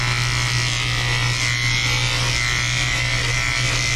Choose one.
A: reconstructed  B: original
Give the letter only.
B